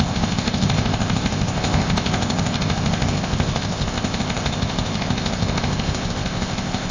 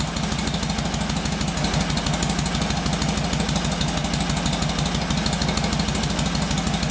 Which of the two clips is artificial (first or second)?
first